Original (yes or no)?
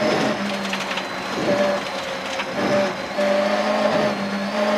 yes